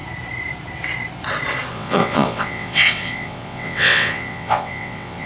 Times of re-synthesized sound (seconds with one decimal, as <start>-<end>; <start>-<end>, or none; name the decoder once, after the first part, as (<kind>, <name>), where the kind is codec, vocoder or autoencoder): 1.7-5.3 (vocoder, WaveNeXt)